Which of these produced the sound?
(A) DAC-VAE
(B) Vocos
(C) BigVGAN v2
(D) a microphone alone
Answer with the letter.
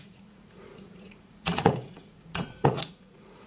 B